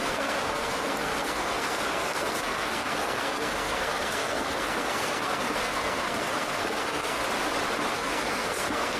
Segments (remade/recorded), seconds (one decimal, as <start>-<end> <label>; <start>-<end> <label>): 0.0-7.2 remade; 7.2-7.9 recorded; 7.9-9.0 remade